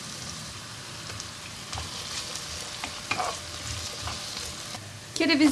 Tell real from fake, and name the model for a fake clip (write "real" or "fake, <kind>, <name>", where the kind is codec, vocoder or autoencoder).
real